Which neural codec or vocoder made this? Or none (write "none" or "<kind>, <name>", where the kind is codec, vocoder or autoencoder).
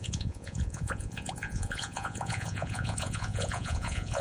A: vocoder, Vocos